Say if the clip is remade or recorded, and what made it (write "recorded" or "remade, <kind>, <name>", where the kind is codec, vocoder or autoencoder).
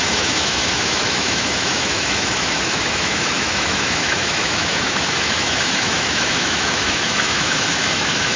remade, autoencoder, DAC-VAE